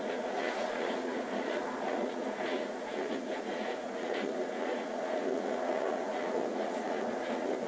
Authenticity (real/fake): fake